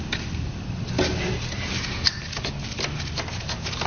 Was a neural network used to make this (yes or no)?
no